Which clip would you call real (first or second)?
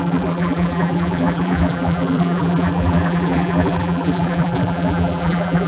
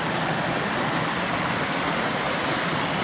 second